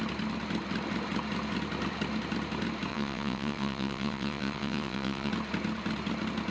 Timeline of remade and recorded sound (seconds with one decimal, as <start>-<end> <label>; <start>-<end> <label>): 0.0-2.9 recorded; 2.9-5.3 remade; 5.3-6.5 recorded